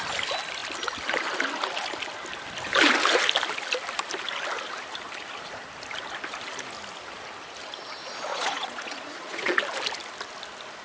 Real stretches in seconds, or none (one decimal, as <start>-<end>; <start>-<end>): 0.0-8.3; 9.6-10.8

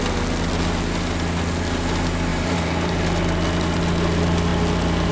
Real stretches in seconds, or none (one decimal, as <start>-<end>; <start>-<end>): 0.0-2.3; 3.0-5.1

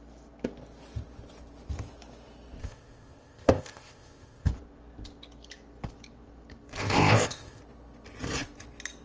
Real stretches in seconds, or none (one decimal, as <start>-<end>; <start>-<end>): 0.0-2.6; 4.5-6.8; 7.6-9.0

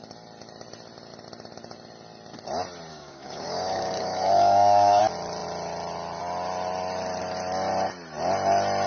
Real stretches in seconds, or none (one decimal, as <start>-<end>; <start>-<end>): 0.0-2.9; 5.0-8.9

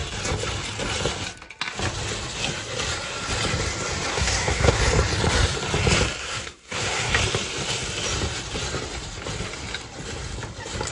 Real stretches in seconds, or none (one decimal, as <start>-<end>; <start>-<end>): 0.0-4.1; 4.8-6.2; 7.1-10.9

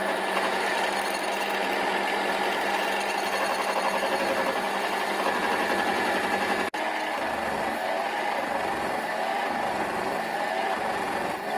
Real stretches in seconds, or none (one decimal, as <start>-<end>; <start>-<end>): 0.6-11.6